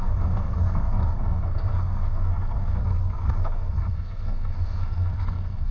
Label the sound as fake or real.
fake